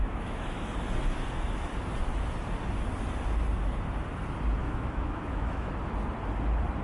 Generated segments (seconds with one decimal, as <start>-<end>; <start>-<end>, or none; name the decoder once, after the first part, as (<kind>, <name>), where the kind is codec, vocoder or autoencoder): 0.0-0.7 (autoencoder, DAC-VAE); 4.6-5.7